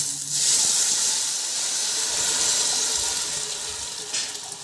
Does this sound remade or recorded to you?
recorded